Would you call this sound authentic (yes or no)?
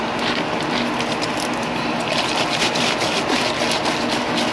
yes